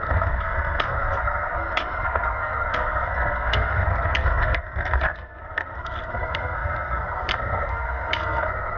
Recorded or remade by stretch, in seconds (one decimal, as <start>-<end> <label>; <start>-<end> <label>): 0.0-8.8 remade

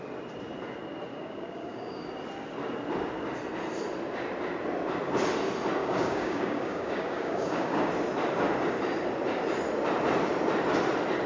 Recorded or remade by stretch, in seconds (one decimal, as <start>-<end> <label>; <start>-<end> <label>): 0.0-1.1 recorded; 1.1-2.1 remade; 2.1-5.8 recorded; 5.8-7.9 remade; 7.9-11.3 recorded